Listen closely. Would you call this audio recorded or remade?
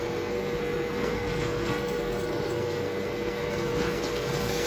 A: remade